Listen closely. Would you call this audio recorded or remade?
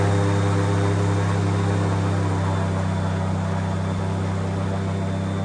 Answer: recorded